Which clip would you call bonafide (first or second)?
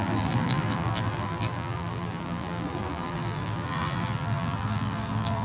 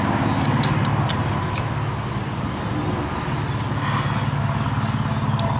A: second